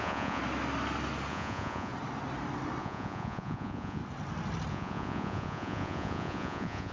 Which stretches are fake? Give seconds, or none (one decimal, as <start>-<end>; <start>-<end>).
0.0-0.4; 1.3-1.9; 2.8-4.0; 4.7-6.9